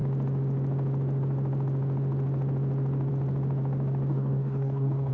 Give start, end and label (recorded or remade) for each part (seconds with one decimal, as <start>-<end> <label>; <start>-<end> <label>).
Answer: 0.0-4.1 recorded; 4.1-5.1 remade

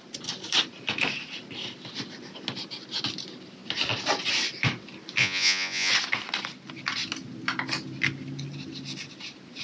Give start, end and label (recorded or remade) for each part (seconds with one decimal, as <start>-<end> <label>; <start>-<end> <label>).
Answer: 0.0-5.2 recorded; 5.2-5.9 remade; 5.9-9.6 recorded

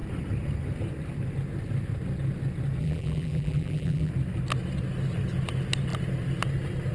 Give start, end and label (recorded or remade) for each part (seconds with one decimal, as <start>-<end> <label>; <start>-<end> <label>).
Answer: 0.0-2.8 recorded; 2.8-4.1 remade; 4.1-6.9 recorded

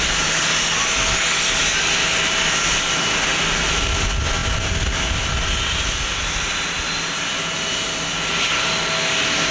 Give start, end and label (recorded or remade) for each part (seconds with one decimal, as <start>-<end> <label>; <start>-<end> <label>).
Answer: 0.0-9.5 recorded

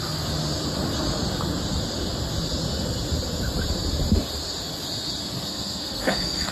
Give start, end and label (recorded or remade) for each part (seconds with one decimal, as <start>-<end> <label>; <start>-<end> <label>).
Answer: 0.0-5.5 recorded; 5.5-6.5 remade

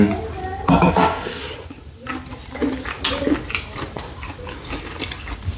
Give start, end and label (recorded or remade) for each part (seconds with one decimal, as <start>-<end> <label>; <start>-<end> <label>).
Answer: 0.0-0.4 recorded; 0.4-1.4 remade; 1.4-5.6 recorded

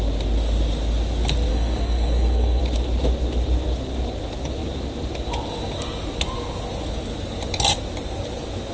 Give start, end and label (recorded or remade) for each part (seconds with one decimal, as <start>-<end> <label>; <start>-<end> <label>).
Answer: 0.0-1.5 recorded; 1.5-2.6 remade; 2.6-8.7 recorded

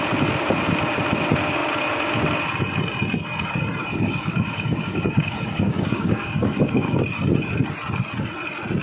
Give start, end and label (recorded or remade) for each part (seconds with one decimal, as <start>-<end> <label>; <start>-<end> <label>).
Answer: 0.0-3.8 recorded; 3.8-7.0 remade; 7.0-8.8 recorded